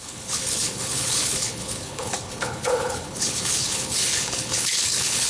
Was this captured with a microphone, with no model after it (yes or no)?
no